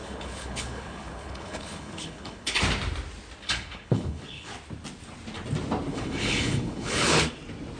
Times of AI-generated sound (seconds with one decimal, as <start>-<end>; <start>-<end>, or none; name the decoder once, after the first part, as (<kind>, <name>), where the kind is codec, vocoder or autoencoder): 0.0-2.6 (codec, HILCodec); 3.4-4.5; 5.9-7.2